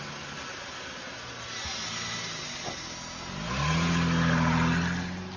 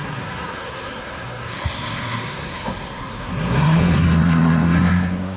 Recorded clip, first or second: first